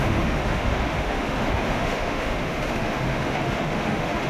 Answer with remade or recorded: remade